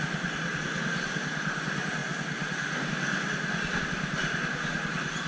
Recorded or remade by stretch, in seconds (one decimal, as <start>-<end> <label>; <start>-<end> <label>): 0.0-5.3 recorded